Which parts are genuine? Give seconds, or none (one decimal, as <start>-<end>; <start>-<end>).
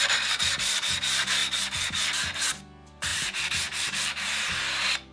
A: 0.0-3.1; 4.5-5.1